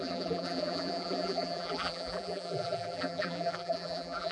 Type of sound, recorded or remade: remade